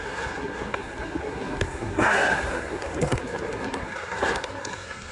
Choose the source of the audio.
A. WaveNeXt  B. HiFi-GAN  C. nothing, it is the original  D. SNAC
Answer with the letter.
D